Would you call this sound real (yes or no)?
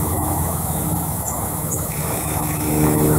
no